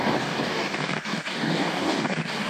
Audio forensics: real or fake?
fake